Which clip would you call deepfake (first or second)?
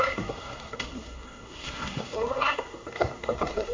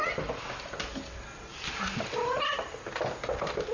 first